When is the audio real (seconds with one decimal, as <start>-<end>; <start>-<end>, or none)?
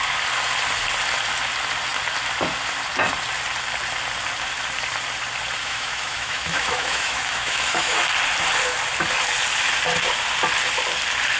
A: 0.0-5.6; 8.0-11.4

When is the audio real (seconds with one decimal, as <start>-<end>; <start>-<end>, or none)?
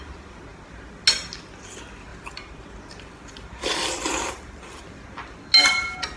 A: 0.0-2.1; 5.5-6.2